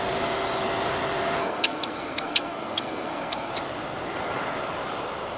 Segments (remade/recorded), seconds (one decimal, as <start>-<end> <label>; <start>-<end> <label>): 0.0-1.4 recorded; 1.4-3.5 remade; 3.5-5.4 recorded